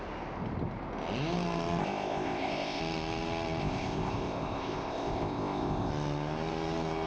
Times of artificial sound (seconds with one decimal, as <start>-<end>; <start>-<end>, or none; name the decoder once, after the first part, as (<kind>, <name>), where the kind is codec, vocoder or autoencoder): 1.8-2.8 (codec, ZipCodec); 3.6-5.9